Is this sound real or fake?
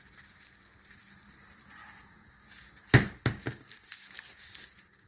real